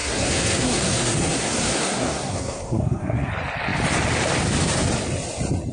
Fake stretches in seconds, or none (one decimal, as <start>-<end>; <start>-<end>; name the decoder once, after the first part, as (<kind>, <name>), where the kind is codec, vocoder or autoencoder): 0.0-3.3 (codec, SNAC)